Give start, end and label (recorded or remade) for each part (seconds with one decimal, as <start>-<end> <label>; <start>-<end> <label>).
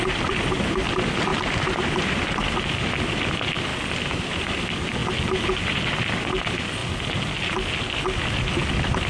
0.0-5.0 remade; 5.0-5.5 recorded; 5.5-6.8 remade; 6.8-8.7 recorded; 8.7-9.1 remade